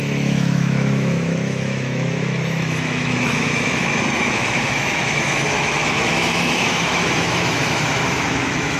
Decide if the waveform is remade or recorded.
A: remade